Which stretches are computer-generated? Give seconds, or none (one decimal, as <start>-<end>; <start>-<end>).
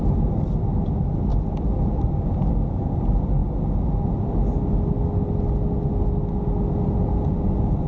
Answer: none